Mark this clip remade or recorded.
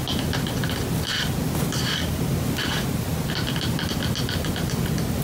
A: recorded